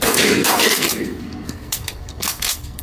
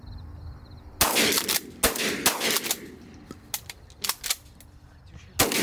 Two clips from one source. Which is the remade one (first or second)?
first